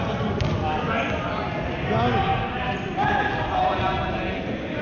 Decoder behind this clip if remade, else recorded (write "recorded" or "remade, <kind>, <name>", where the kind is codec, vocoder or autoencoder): recorded